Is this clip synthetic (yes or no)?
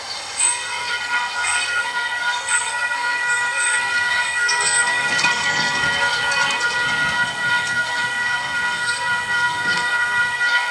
yes